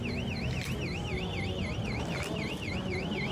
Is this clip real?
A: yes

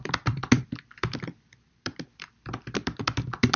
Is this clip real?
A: no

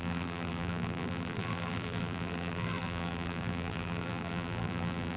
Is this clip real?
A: no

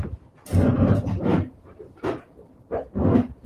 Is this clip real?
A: yes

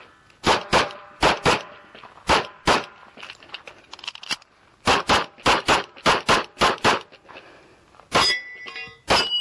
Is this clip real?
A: yes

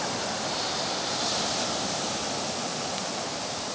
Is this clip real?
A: yes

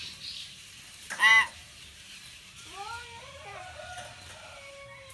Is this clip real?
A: no